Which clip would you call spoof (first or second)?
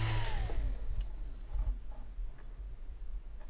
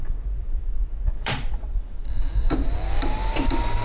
second